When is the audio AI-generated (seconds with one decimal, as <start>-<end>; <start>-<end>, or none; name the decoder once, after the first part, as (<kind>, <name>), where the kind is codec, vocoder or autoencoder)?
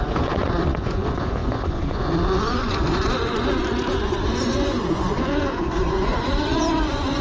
0.0-7.2 (vocoder, Vocos)